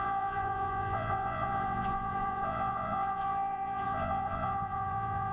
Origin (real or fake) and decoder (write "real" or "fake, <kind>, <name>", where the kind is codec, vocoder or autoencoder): fake, vocoder, Vocos